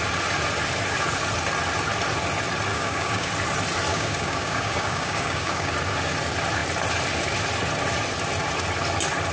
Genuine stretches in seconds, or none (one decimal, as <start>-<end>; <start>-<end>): 0.0-2.7; 3.3-3.9; 5.7-9.3